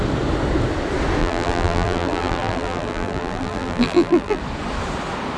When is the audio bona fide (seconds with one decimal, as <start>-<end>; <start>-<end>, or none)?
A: 0.0-1.2; 4.4-5.4